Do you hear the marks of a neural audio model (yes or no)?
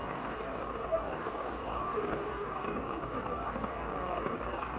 yes